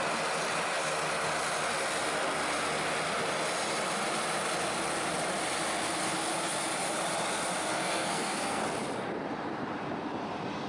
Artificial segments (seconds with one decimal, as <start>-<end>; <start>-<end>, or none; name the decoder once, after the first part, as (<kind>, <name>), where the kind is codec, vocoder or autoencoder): 7.6-8.6 (codec, SNAC)